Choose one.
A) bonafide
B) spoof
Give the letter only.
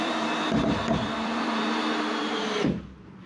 B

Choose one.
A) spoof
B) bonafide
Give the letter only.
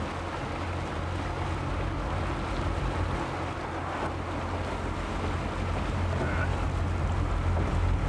B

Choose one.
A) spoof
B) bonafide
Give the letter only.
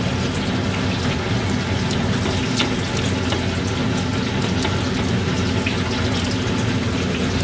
B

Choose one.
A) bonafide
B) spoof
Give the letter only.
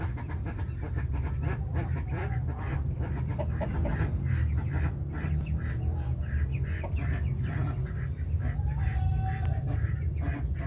A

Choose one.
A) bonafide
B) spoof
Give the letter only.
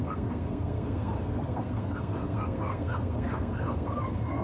B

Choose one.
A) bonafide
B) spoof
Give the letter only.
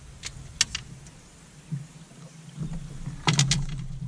A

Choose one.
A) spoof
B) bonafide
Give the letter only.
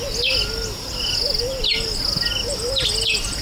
B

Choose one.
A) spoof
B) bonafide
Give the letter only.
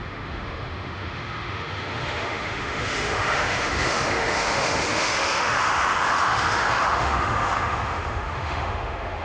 A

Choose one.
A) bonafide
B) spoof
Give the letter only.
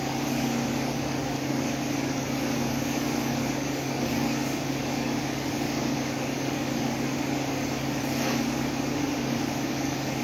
B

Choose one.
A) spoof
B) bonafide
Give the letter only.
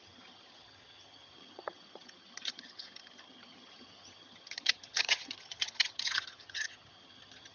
A